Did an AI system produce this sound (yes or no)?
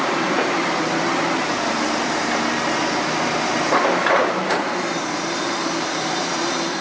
yes